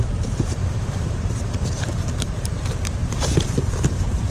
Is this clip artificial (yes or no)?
yes